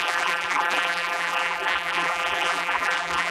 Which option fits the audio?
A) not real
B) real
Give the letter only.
A